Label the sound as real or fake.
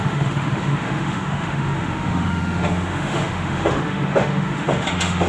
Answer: fake